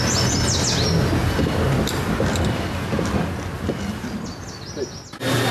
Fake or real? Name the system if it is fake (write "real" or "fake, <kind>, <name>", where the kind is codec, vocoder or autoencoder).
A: real